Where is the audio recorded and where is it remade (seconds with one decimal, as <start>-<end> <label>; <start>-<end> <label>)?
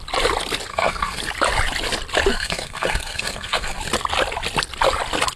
0.0-0.7 recorded; 0.7-1.2 remade; 1.2-2.3 recorded; 2.3-3.8 remade; 3.8-5.4 recorded